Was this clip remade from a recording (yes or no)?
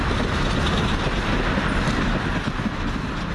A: no